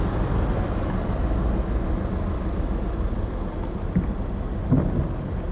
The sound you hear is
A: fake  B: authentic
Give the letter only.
B